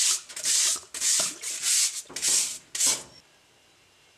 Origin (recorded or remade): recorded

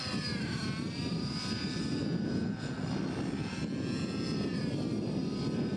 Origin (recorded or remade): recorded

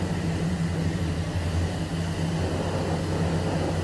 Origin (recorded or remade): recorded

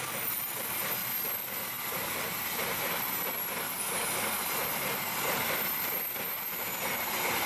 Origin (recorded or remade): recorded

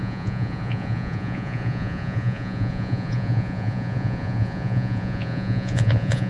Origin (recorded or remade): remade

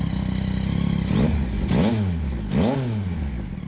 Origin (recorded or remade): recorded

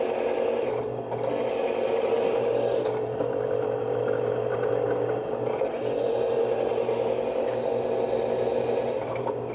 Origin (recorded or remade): recorded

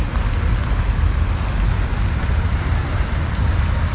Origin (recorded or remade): recorded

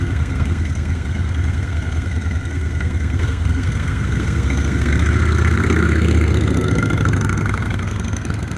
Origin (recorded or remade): remade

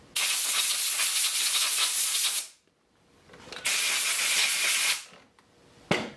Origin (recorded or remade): recorded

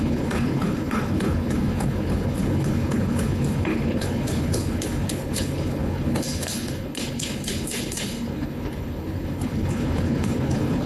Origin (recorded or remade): remade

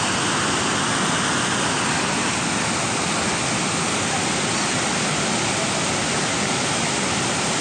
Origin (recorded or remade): recorded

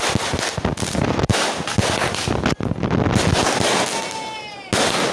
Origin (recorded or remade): recorded